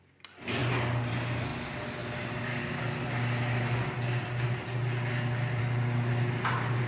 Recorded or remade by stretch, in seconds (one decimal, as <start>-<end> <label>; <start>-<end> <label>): 0.0-6.9 recorded